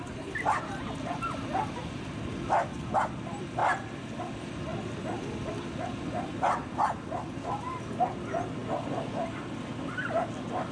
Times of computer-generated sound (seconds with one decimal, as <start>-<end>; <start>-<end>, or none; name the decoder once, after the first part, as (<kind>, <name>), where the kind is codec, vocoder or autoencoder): none